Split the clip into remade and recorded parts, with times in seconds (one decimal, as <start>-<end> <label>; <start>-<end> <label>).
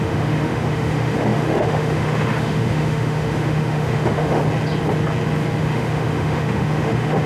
0.0-4.4 remade; 4.4-5.6 recorded; 5.6-7.3 remade